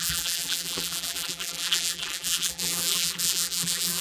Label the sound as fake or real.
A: fake